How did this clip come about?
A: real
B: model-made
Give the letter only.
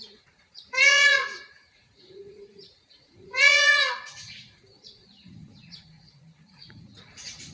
B